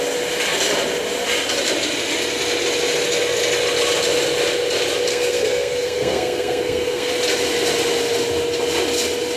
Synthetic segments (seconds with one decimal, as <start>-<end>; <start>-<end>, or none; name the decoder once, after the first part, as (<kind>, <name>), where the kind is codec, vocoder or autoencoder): 5.1-7.1 (codec, SNAC)